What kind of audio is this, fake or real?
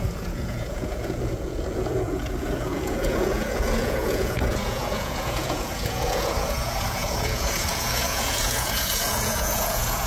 fake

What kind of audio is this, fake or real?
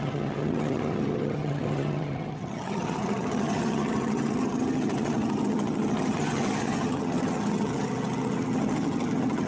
fake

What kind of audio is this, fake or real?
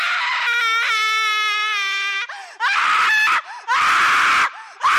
real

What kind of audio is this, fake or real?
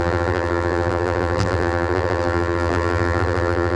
fake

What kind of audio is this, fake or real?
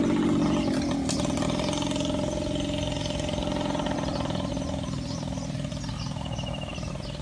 real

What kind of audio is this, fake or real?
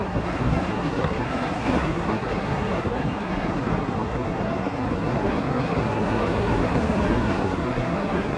fake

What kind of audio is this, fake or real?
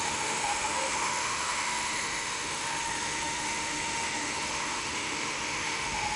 fake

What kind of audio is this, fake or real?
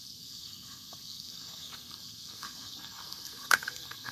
fake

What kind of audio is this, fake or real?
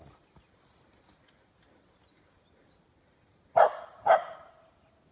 real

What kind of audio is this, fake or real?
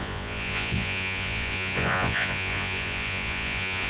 fake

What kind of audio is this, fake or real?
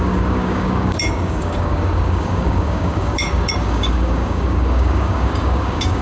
fake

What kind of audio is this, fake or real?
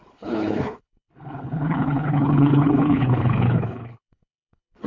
fake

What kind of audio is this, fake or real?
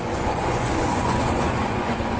fake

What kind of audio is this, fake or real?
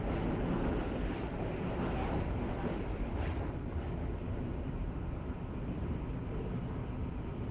real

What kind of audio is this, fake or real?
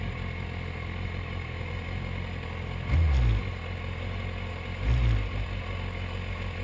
real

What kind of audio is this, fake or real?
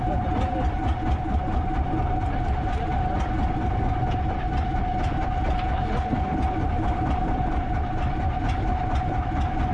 real